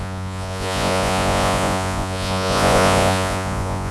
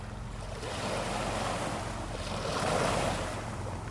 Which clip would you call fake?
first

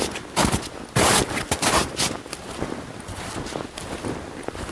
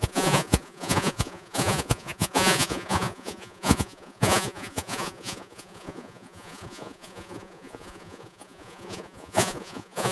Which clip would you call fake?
second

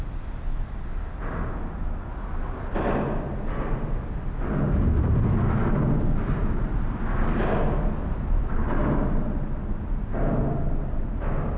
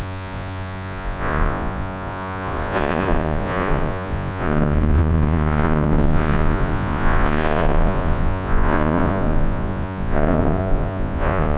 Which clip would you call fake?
second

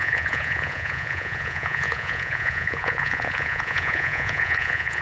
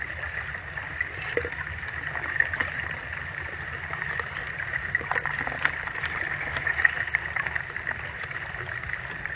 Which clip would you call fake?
first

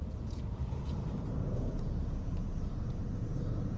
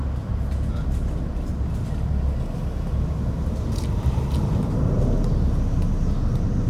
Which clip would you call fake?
first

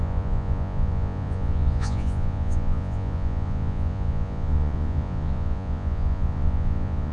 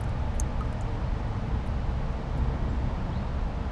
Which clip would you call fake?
first